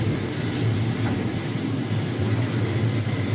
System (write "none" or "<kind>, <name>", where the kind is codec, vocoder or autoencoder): none